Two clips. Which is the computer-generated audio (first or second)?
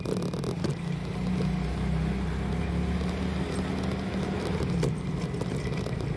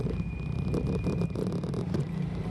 second